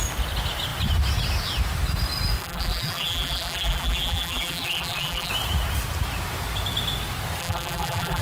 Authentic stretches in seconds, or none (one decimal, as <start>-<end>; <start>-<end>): 0.0-2.4; 5.3-7.4